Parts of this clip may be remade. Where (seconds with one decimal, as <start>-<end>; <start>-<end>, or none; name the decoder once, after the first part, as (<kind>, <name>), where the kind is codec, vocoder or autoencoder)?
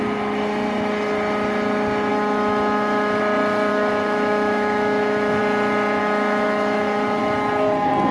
2.1-3.2 (autoencoder, DAC-VAE); 3.7-5.4; 6.0-7.2